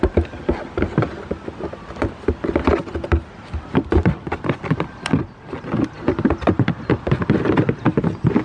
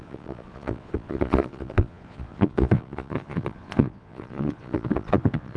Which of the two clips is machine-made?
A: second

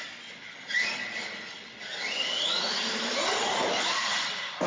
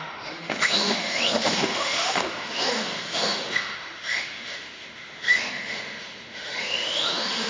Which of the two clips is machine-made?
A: second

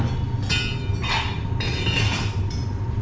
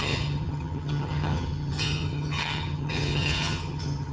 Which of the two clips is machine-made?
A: second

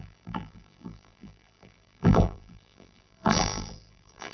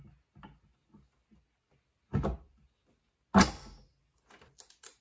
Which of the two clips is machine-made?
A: first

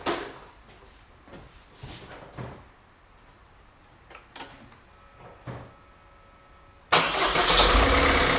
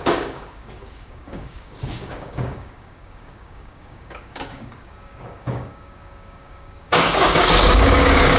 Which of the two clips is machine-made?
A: second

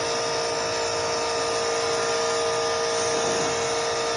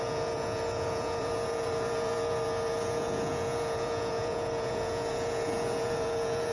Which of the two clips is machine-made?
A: second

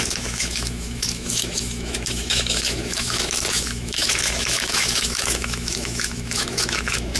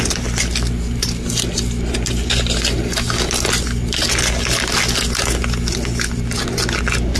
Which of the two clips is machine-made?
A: first